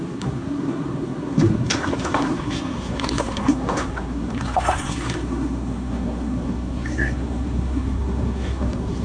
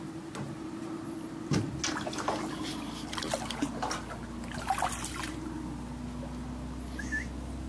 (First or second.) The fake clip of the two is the first